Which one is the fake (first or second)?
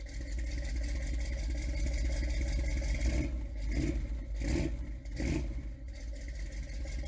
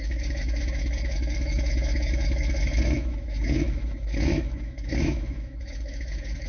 second